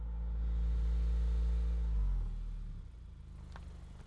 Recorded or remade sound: recorded